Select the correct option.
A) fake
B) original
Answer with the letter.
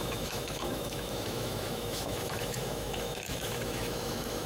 A